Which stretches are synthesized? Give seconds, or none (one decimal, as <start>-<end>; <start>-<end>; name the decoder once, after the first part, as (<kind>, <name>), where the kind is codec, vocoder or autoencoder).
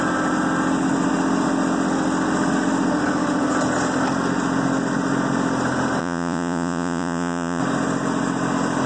6.0-7.6 (vocoder, Vocos)